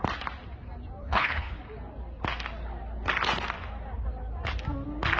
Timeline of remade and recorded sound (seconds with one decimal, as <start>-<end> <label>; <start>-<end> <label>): 0.0-1.0 recorded; 1.0-1.6 remade; 1.6-5.2 recorded

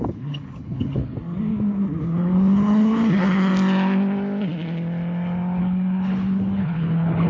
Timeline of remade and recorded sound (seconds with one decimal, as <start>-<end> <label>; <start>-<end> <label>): 0.0-1.0 remade; 1.0-2.0 recorded; 2.0-3.5 remade; 3.5-5.6 recorded; 5.6-7.3 remade

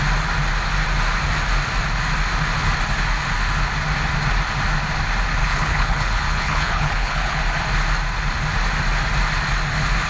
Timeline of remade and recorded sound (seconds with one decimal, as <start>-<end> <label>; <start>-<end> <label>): 0.0-5.4 recorded; 5.4-7.4 remade; 7.4-10.1 recorded

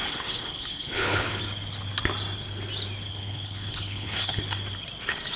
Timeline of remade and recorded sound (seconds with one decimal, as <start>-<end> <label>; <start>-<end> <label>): 0.0-1.4 remade; 1.4-3.1 recorded; 3.1-4.4 remade; 4.4-5.4 recorded

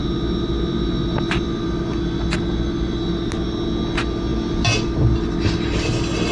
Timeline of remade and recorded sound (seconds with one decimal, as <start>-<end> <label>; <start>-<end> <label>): 0.0-6.3 recorded

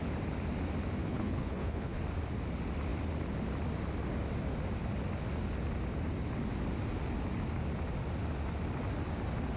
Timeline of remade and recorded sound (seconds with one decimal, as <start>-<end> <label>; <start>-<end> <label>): 0.0-1.0 recorded; 1.0-2.0 remade; 2.0-9.6 recorded